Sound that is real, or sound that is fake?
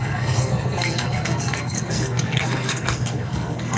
fake